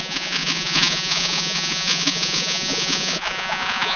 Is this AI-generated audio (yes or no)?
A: yes